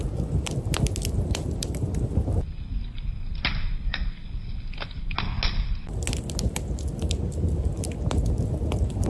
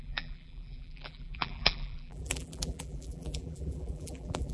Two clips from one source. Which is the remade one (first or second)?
second